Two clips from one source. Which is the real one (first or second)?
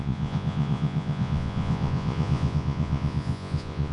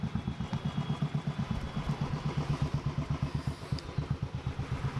second